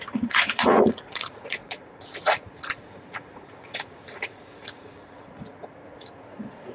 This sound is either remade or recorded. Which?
remade